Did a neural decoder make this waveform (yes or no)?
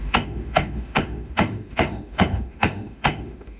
yes